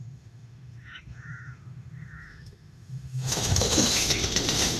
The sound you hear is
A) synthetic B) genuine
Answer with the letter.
A